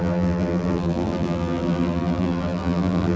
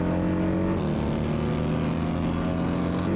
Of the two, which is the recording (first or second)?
second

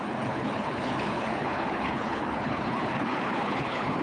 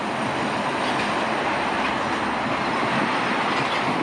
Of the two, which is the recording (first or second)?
second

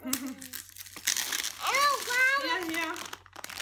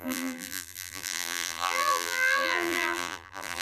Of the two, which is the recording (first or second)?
first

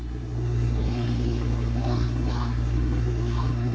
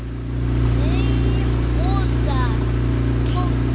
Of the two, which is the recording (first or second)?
second